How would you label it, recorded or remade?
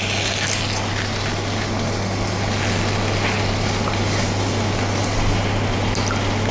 recorded